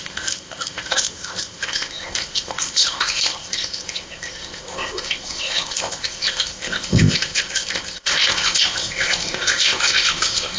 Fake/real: fake